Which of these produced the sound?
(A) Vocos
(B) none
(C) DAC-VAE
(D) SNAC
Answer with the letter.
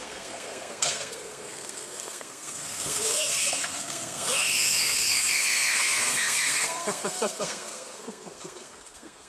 D